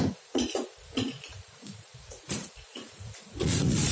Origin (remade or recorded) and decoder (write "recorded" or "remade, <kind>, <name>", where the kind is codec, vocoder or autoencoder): remade, vocoder, Vocos